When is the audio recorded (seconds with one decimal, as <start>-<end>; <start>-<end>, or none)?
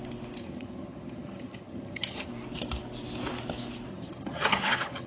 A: 0.0-0.4; 2.3-3.9